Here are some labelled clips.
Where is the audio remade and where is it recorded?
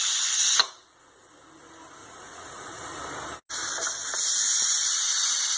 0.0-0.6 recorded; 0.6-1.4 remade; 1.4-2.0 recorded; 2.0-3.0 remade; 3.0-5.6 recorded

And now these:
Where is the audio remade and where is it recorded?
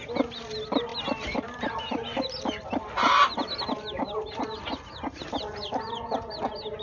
0.0-6.8 recorded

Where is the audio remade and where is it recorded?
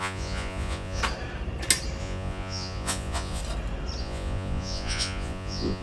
0.0-1.0 remade; 1.0-2.0 recorded; 2.0-3.4 remade; 3.4-4.0 recorded; 4.0-5.8 remade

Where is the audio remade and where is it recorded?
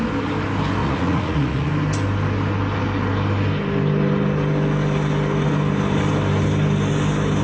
0.0-0.8 recorded; 0.8-1.7 remade; 1.7-7.4 recorded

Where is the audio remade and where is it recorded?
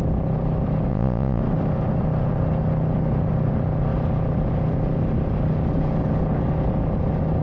0.0-0.9 recorded; 0.9-1.4 remade; 1.4-7.4 recorded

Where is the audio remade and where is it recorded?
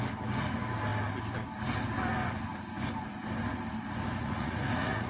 0.0-4.2 recorded; 4.2-5.1 remade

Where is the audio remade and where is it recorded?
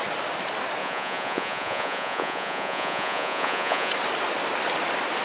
0.0-0.8 recorded; 0.8-3.9 remade; 3.9-5.2 recorded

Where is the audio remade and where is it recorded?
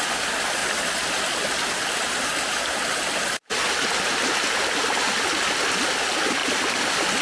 0.0-7.2 recorded